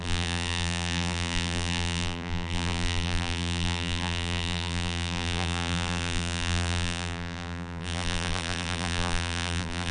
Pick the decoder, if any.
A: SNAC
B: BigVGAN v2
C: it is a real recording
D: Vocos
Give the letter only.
B